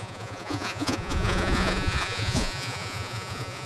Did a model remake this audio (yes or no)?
yes